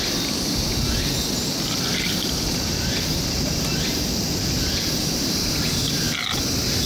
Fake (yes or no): no